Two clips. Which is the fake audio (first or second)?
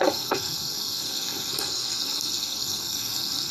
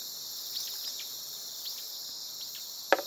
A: first